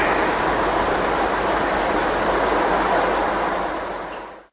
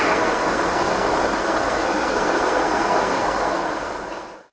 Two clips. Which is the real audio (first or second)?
first